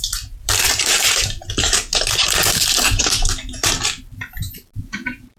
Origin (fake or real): fake